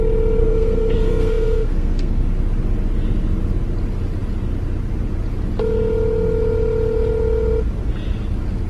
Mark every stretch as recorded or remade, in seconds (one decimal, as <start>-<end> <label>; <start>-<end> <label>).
0.0-0.4 recorded; 0.4-2.2 remade; 2.2-8.7 recorded